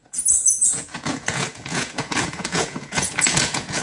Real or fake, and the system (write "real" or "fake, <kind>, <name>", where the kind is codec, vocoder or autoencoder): fake, vocoder, Vocos